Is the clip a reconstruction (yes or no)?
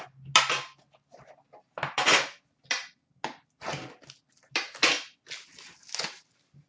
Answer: no